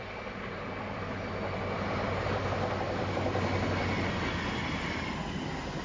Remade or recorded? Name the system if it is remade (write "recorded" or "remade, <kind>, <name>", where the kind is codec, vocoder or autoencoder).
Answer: recorded